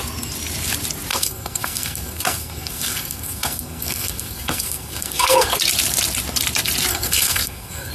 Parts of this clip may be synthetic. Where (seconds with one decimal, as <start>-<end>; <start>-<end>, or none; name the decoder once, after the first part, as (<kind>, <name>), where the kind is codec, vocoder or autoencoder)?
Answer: 1.1-5.6 (codec, SNAC); 6.9-7.9